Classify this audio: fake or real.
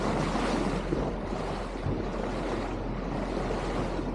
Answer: real